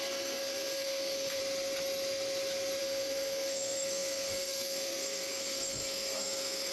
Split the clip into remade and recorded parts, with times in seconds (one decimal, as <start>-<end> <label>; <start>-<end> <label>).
0.0-1.4 remade; 1.4-2.8 recorded; 2.8-6.7 remade